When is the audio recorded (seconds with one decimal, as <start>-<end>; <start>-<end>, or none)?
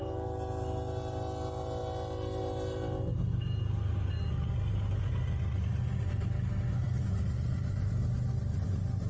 0.0-9.1